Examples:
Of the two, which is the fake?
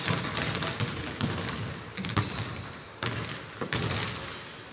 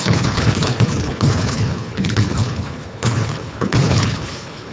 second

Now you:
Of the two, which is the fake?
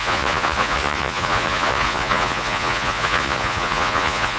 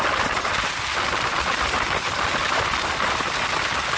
first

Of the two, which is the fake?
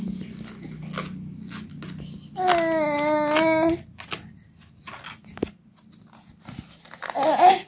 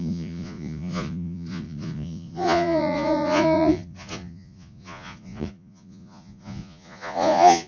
second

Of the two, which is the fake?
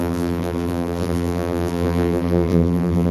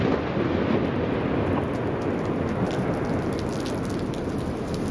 first